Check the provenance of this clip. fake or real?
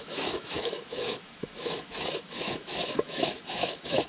fake